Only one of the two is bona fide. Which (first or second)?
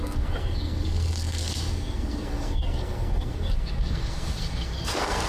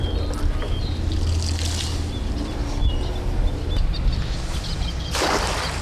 second